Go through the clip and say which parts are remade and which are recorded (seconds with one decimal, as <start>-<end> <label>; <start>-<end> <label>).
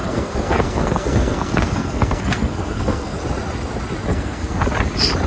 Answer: 0.0-3.2 remade; 3.2-4.1 recorded; 4.1-4.6 remade; 4.6-5.3 recorded